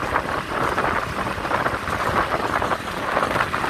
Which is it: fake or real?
real